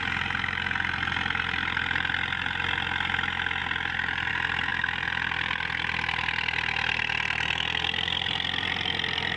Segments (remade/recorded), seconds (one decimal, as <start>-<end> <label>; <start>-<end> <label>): 0.0-4.7 recorded; 4.7-9.4 remade